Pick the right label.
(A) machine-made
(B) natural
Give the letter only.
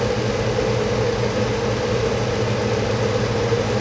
B